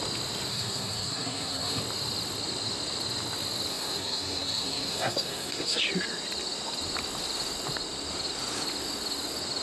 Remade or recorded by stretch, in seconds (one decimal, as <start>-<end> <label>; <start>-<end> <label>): 0.0-0.5 recorded; 0.5-1.8 remade; 1.8-3.7 recorded; 3.7-5.8 remade; 5.8-9.6 recorded